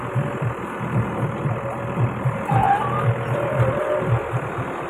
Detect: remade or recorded recorded